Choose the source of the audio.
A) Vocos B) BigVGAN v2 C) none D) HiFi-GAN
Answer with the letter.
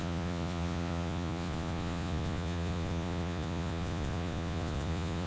A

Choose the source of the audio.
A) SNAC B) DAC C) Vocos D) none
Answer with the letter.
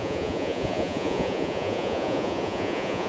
C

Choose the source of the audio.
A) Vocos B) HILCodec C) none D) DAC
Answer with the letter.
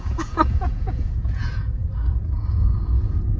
A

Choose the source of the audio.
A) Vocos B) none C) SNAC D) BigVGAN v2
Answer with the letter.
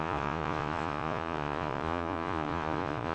A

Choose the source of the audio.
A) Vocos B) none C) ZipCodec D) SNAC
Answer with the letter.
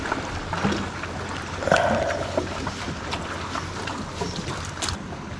B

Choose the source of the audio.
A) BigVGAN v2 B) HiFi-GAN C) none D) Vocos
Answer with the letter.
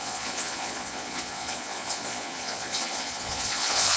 D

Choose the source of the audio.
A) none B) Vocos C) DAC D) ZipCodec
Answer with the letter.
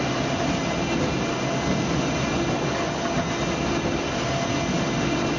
A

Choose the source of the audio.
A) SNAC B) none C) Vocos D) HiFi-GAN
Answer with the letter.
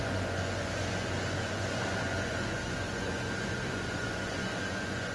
C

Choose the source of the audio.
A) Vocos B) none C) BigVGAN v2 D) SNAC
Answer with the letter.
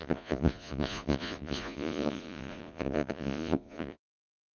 A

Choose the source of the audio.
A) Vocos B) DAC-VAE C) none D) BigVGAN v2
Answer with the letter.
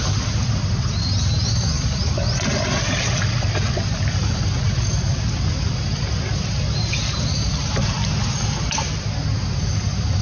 C